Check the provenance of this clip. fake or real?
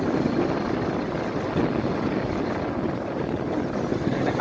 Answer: real